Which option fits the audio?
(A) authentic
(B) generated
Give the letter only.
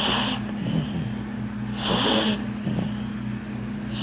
A